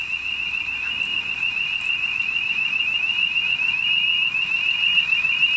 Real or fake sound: real